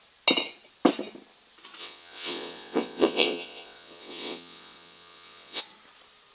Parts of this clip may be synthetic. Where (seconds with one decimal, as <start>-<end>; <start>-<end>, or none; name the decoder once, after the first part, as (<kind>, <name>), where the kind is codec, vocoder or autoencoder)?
1.8-5.6 (vocoder, WaveNeXt)